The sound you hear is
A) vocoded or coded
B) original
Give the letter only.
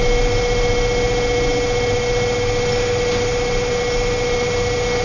B